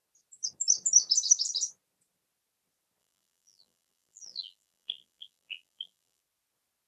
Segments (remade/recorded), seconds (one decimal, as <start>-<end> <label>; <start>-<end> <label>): 0.0-3.0 recorded; 3.0-6.2 remade; 6.2-6.9 recorded